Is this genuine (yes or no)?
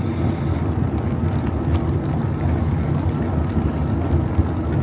yes